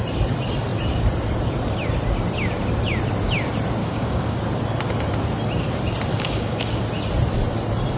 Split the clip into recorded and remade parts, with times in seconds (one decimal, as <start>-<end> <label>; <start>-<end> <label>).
0.0-3.8 recorded; 3.8-4.4 remade; 4.4-6.1 recorded; 6.1-6.8 remade; 6.8-8.0 recorded